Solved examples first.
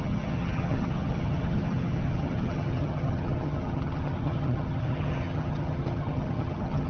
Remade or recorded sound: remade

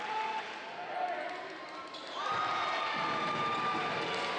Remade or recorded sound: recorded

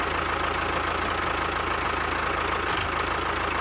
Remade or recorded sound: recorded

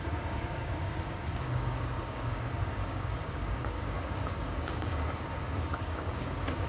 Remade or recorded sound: remade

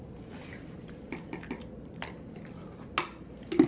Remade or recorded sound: recorded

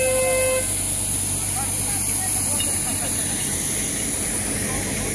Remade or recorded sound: recorded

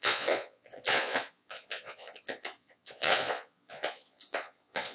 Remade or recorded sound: remade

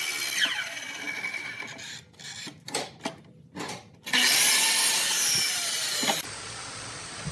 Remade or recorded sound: recorded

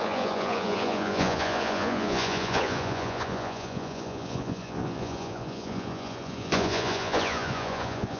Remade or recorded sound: remade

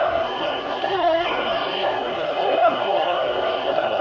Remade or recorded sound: remade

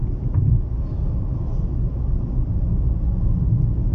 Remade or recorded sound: recorded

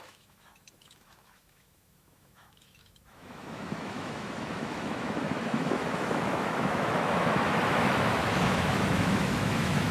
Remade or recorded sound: remade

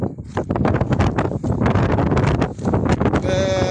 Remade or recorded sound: recorded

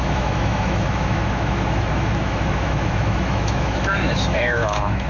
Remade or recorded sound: remade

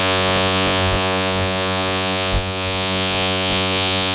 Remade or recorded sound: remade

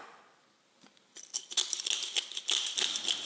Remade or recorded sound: recorded